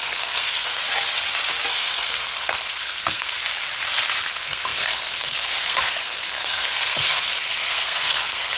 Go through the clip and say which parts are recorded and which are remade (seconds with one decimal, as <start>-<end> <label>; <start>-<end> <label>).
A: 0.0-0.8 remade; 0.8-1.7 recorded; 1.7-3.4 remade; 3.4-4.2 recorded; 4.2-8.6 remade